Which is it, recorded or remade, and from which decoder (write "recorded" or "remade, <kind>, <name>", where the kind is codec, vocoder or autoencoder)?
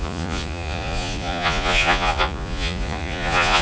remade, vocoder, Vocos